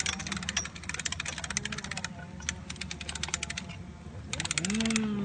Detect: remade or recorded recorded